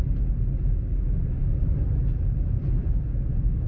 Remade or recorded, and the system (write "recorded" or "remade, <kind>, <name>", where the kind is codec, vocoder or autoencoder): recorded